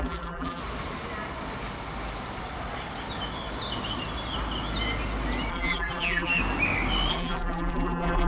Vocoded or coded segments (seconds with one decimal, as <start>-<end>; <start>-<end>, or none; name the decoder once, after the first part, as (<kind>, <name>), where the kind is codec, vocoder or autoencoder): 0.0-0.6 (vocoder, BigVGAN v2); 5.5-6.4; 7.1-8.3